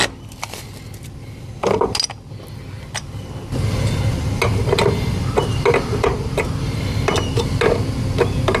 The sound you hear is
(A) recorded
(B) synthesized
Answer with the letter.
A